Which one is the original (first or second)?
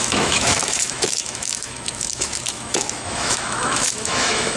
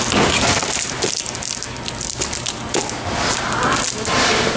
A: second